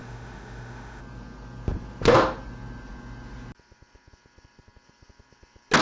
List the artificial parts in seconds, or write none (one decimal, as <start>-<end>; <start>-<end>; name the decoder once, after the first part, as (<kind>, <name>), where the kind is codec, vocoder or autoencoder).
0.0-1.0 (autoencoder, DAC-VAE)